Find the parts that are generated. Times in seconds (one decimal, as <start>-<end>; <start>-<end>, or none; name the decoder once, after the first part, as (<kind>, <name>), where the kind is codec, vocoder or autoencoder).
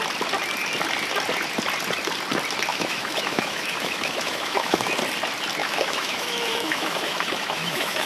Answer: 2.7-4.9 (autoencoder, DAC-VAE); 5.6-8.1